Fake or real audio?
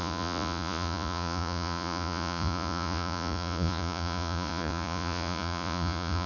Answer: fake